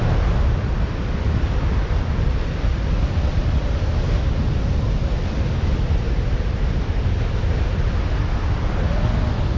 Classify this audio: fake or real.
real